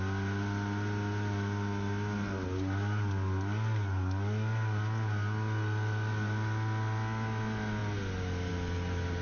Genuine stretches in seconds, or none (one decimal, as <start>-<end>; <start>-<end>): 0.0-9.2

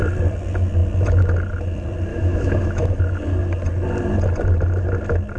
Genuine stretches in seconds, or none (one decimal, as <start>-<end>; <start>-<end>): 0.0-2.1; 3.0-5.4

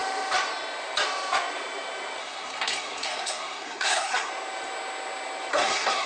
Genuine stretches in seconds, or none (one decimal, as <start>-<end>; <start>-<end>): 0.0-2.2; 4.3-5.5

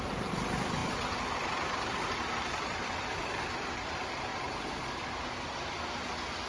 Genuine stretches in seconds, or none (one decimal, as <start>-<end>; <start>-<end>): 0.8-1.3; 4.3-5.1

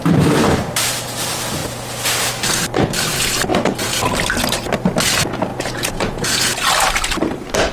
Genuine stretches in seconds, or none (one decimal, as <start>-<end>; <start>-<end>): 0.0-5.5; 6.5-7.7

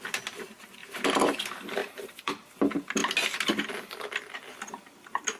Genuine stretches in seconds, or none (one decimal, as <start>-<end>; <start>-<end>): 0.0-0.8; 1.4-1.8; 2.6-5.4